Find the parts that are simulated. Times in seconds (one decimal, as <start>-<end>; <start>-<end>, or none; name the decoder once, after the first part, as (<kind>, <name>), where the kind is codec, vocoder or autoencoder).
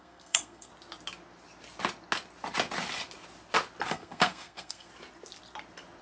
0.0-0.7 (codec, SNAC); 3.9-4.9